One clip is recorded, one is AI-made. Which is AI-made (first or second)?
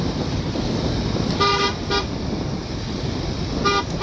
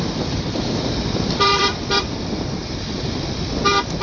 second